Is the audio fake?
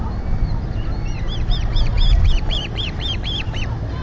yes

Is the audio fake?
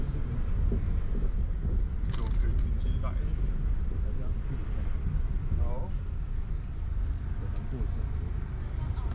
no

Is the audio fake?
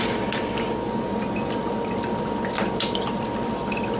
no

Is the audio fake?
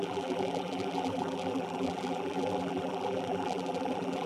yes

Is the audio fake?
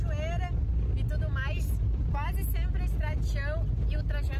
no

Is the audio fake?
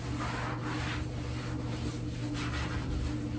no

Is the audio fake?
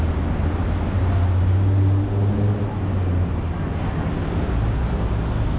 no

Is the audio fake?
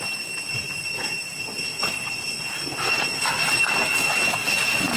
no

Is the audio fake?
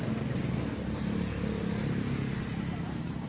no